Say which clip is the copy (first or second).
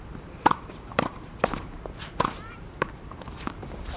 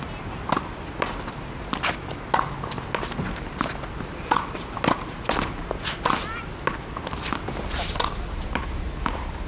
first